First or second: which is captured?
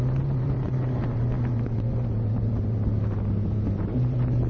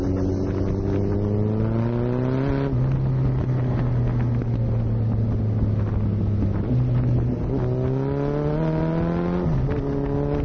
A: second